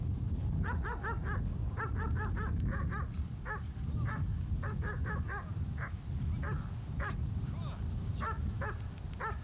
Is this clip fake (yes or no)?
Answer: no